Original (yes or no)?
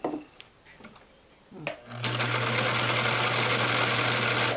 yes